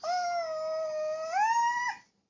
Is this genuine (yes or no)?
yes